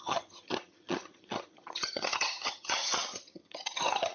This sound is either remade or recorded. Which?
remade